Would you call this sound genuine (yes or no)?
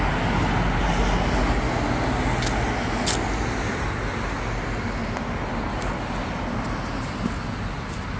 yes